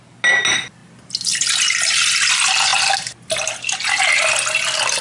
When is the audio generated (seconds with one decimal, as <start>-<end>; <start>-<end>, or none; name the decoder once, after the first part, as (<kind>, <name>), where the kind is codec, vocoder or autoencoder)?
none

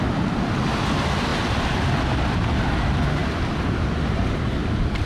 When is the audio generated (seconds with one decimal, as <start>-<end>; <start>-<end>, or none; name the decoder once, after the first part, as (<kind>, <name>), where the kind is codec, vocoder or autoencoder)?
1.3-2.1 (vocoder, BigVGAN v2); 3.2-5.1

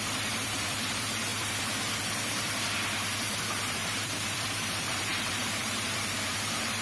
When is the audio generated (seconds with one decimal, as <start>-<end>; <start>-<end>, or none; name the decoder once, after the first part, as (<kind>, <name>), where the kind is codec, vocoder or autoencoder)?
0.0-1.3 (vocoder, BigVGAN v2); 3.7-6.8

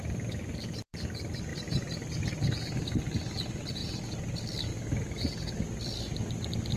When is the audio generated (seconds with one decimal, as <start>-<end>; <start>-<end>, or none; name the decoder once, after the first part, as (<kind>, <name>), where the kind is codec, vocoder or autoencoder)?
0.0-1.5 (vocoder, BigVGAN v2); 2.2-4.7; 5.3-6.8